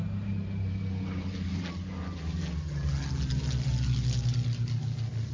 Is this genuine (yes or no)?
yes